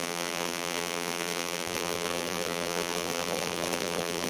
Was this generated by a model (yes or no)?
yes